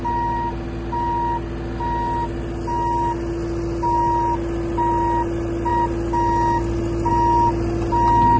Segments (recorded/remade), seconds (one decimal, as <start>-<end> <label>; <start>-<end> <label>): 0.0-8.4 recorded